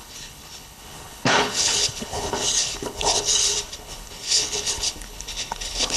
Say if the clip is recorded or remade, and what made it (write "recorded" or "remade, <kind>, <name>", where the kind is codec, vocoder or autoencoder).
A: remade, codec, HILCodec